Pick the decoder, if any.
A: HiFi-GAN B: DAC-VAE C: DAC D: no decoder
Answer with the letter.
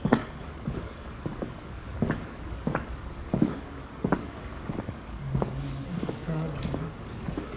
C